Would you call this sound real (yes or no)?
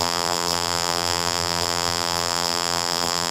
no